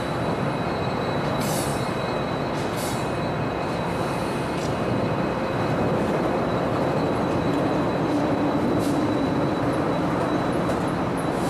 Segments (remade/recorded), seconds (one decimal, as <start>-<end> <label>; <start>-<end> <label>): 0.0-11.5 recorded